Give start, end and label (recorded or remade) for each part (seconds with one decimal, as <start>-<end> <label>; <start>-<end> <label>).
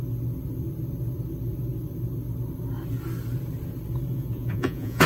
0.0-4.1 recorded; 4.1-5.1 remade